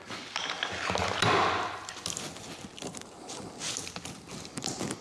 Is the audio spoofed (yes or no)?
no